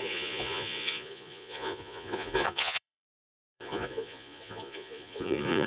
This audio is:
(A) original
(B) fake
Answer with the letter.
B